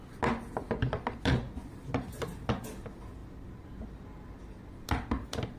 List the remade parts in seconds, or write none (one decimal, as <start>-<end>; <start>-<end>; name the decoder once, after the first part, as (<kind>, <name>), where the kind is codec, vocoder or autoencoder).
none